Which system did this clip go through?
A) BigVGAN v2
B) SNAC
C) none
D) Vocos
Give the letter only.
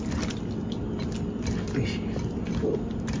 C